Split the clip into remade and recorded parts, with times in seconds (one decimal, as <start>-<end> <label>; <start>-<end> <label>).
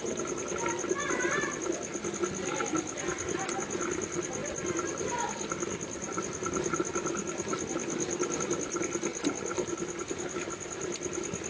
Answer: 0.0-4.4 recorded; 4.4-8.4 remade; 8.4-9.1 recorded; 9.1-10.0 remade; 10.0-11.5 recorded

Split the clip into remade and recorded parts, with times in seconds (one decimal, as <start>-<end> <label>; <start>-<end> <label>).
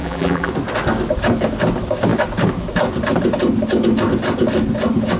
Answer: 0.0-0.5 remade; 0.5-5.2 recorded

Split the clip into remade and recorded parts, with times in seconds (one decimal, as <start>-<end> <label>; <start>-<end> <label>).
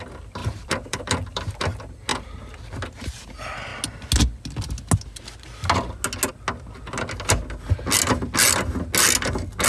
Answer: 0.0-0.4 recorded; 0.4-1.6 remade; 1.6-9.7 recorded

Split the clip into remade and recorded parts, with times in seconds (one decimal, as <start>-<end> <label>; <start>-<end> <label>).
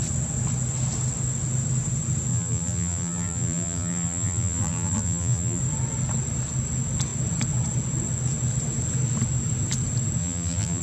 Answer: 0.0-2.3 recorded; 2.3-5.6 remade; 5.6-10.2 recorded; 10.2-10.8 remade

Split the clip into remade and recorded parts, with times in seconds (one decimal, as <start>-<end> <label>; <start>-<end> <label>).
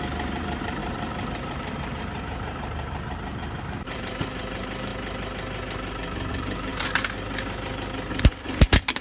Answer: 0.0-4.9 remade; 4.9-6.3 recorded; 6.3-6.7 remade; 6.7-9.0 recorded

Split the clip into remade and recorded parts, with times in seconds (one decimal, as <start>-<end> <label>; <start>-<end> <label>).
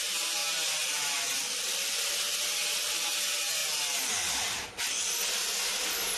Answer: 0.0-0.4 recorded; 0.4-1.4 remade; 1.4-6.2 recorded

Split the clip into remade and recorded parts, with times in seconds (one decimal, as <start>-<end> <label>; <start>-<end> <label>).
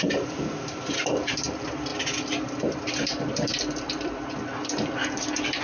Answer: 0.0-1.9 remade; 1.9-2.5 recorded; 2.5-5.6 remade